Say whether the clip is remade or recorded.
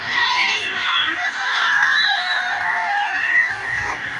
remade